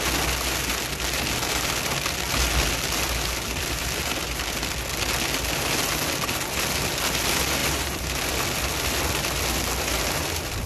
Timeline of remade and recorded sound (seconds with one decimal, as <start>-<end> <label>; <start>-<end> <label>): 0.0-7.6 recorded; 7.6-9.1 remade; 9.1-10.7 recorded